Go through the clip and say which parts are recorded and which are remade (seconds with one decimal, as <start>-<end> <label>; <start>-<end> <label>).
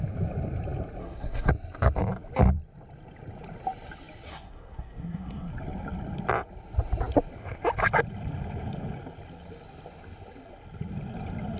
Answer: 0.0-1.0 recorded; 1.0-1.5 remade; 1.5-4.3 recorded; 4.3-5.5 remade; 5.5-11.6 recorded